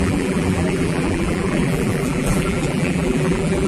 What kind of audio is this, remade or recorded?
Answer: remade